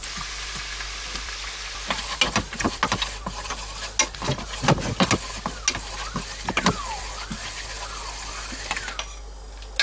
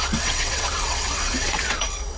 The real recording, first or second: first